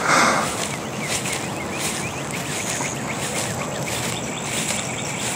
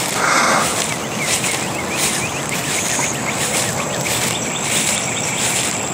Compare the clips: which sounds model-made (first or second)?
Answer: second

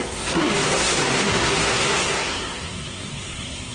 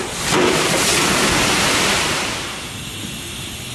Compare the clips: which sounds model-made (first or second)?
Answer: first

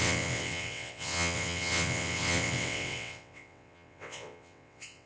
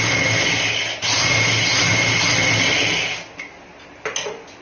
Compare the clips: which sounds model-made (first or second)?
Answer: first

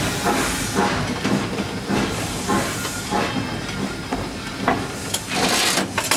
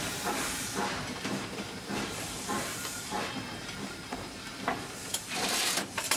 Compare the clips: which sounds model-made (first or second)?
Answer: second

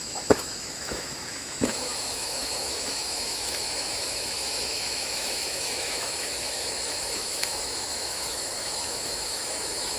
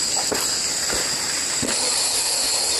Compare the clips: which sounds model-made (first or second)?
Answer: first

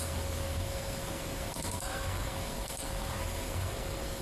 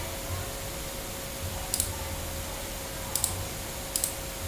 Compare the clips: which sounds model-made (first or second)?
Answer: first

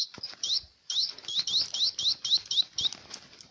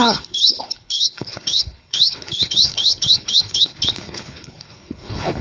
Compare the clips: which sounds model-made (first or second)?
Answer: second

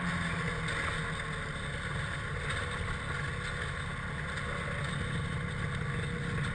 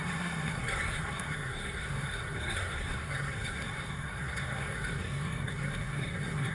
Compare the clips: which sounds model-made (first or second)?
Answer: second